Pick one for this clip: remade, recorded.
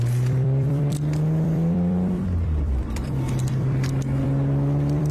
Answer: remade